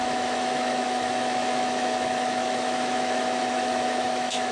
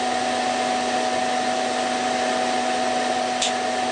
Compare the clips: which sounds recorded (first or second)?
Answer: second